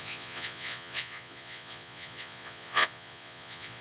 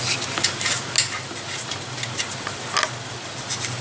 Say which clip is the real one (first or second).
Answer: second